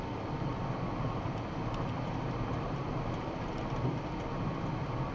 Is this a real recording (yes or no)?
yes